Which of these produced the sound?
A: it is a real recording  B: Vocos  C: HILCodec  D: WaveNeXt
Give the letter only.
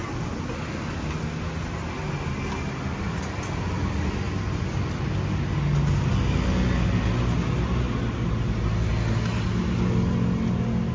A